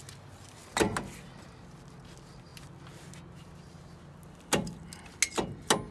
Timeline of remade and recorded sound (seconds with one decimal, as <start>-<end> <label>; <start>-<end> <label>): 0.0-5.9 recorded